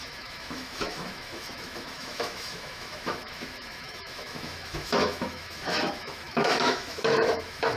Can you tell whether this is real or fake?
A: fake